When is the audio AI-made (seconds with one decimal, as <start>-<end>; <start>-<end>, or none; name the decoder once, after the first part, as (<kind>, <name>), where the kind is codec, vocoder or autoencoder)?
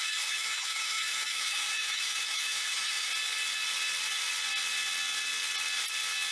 0.0-3.1 (autoencoder, DAC-VAE)